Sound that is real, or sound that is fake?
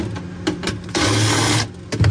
real